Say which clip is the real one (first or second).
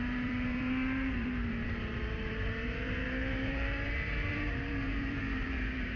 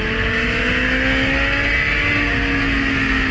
second